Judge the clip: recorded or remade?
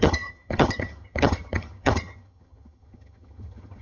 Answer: remade